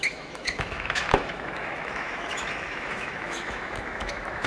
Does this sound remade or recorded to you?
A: remade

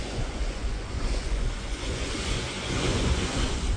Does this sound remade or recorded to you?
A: remade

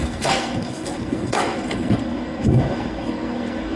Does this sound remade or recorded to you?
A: remade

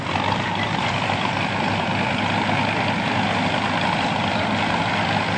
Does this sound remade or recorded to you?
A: recorded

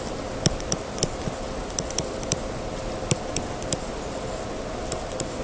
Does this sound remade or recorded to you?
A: recorded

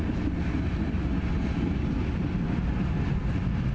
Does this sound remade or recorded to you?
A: recorded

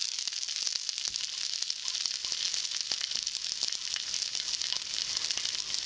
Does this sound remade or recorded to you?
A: recorded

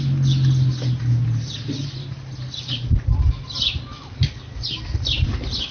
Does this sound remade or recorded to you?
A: recorded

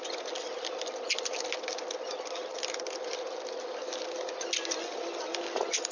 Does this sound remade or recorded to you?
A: recorded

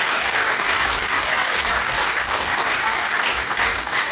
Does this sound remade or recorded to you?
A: remade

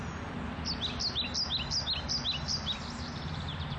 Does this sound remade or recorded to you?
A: recorded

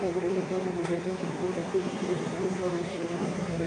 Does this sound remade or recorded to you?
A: remade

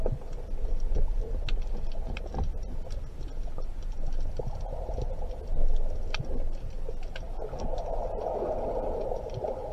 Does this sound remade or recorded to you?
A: recorded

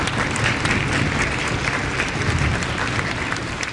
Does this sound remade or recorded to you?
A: recorded